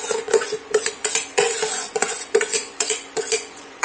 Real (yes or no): no